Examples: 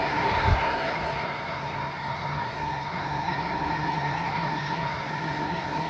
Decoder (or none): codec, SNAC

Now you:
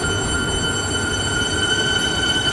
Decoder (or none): none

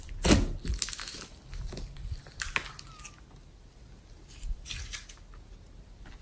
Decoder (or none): none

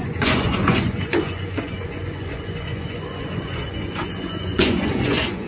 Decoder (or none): vocoder, Vocos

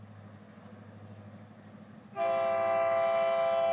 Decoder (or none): none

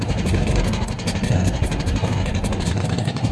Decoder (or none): codec, SNAC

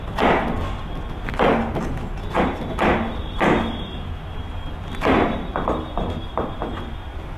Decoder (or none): none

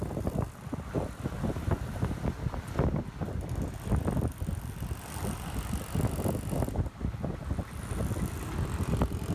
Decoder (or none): none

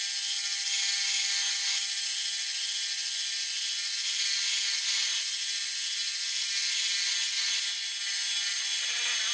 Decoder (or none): none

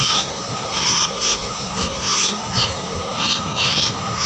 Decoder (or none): codec, SNAC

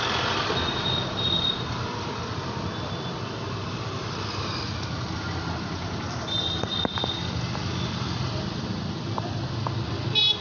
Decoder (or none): vocoder, BigVGAN v2